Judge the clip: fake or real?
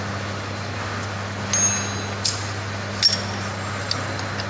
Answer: real